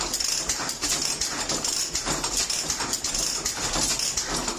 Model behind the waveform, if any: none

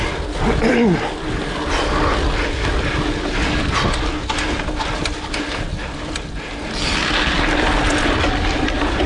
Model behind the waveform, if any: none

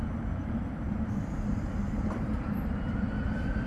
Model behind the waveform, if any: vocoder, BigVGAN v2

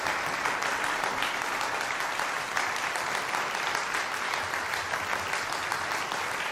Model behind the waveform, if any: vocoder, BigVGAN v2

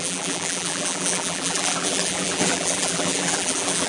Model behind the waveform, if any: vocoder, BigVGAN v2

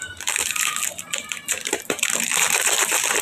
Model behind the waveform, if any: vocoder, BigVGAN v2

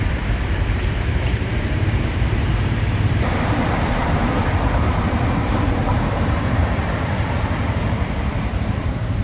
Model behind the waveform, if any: vocoder, BigVGAN v2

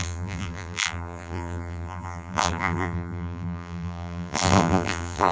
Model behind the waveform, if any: vocoder, BigVGAN v2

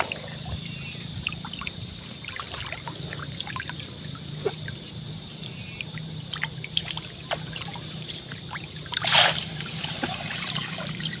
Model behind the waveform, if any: vocoder, BigVGAN v2